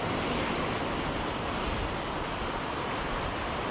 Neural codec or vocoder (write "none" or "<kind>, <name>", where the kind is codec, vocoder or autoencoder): none